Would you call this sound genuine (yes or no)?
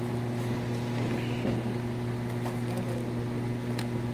yes